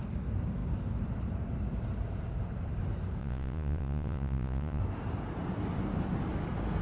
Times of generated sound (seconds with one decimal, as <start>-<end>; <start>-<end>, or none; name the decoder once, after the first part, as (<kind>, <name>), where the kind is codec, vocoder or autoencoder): 3.2-4.8 (vocoder, Vocos)